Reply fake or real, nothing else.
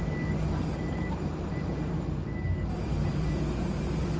fake